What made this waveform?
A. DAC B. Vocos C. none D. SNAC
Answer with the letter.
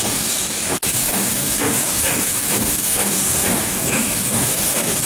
A